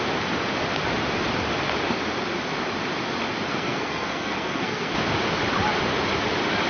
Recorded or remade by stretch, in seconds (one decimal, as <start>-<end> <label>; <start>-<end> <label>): 0.0-3.5 recorded; 3.5-4.9 remade; 4.9-6.7 recorded